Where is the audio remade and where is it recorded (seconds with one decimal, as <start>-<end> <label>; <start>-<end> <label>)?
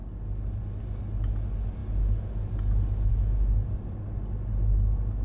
0.0-5.2 recorded